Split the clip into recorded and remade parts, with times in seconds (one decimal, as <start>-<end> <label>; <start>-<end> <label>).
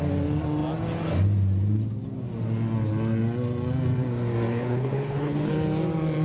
0.0-4.5 recorded; 4.5-5.5 remade; 5.5-6.2 recorded